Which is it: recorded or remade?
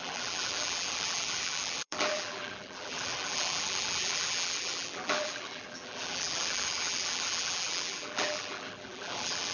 remade